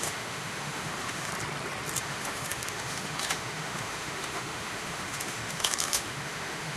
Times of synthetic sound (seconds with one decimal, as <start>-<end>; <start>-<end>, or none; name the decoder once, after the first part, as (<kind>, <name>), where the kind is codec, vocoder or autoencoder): 0.0-1.3 (autoencoder, DAC-VAE); 2.0-6.8